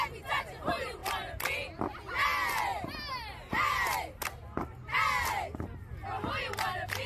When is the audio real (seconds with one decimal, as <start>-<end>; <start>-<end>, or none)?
0.0-7.1